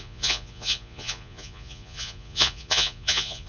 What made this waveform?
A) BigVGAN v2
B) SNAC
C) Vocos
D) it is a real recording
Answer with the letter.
C